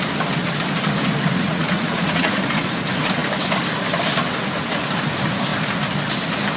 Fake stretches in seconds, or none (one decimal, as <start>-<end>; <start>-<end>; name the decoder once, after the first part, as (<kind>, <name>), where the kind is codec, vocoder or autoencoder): 1.3-2.7 (vocoder, Vocos)